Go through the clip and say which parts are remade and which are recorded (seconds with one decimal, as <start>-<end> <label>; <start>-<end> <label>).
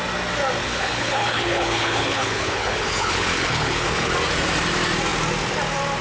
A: 0.0-0.6 recorded; 0.6-4.1 remade; 4.1-6.0 recorded